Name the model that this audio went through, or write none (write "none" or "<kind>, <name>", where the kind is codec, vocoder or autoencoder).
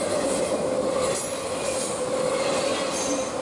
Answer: none